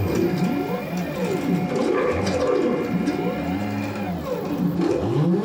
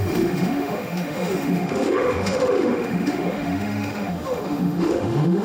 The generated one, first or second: second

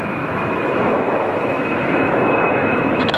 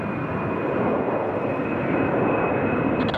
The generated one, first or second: first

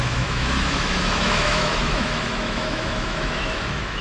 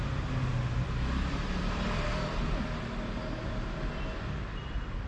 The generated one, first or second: first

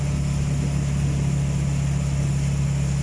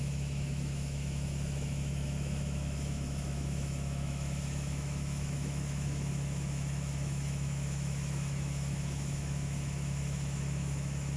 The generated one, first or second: second